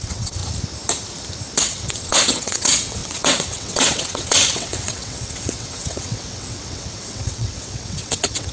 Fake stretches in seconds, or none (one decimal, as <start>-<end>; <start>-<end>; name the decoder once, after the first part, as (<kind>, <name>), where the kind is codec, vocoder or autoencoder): 0.0-0.4 (vocoder, WaveNeXt); 1.6-8.5